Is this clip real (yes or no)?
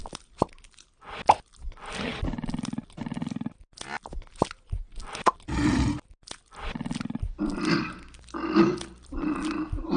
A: yes